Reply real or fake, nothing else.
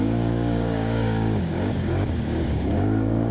fake